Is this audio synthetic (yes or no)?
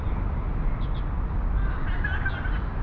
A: no